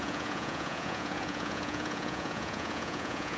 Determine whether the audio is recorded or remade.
remade